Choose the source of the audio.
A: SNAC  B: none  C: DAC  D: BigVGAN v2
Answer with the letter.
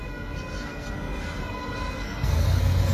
A